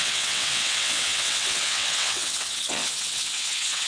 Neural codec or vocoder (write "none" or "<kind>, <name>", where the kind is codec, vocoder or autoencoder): vocoder, WaveNeXt